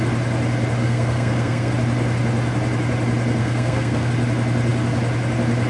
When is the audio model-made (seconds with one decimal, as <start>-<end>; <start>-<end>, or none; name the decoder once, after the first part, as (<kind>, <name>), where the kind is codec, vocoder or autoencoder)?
0.8-1.7 (codec, SNAC); 3.4-4.1